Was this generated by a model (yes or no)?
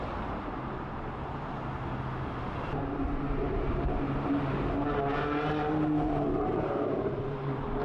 yes